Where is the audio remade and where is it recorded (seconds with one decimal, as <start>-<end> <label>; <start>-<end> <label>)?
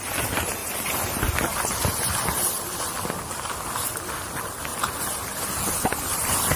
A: 0.0-0.6 remade; 0.6-4.1 recorded; 4.1-4.7 remade; 4.7-5.6 recorded; 5.6-6.6 remade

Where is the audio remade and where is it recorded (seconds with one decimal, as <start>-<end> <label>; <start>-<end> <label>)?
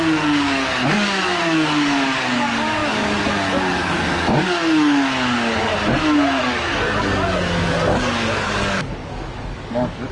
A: 0.0-5.7 remade; 5.7-6.4 recorded; 6.4-10.1 remade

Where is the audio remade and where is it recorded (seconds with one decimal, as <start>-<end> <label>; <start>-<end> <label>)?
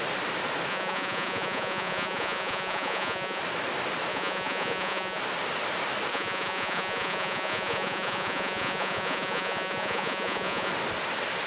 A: 0.0-0.7 recorded; 0.7-3.4 remade; 3.4-4.1 recorded; 4.1-5.2 remade; 5.2-6.1 recorded; 6.1-10.7 remade; 10.7-11.5 recorded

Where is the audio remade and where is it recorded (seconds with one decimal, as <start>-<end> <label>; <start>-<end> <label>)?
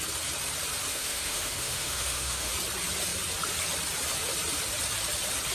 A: 0.0-0.9 recorded; 0.9-2.5 remade; 2.5-5.5 recorded